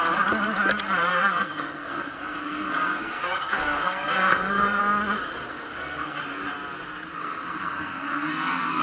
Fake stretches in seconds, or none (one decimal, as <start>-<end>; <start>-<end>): 1.1-4.8; 5.5-6.2; 7.2-8.8